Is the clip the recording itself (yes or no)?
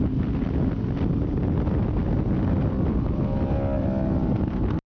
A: yes